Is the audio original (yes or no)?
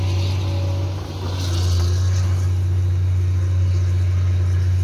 yes